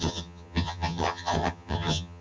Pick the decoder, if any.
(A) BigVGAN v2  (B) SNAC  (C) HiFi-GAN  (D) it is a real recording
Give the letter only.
C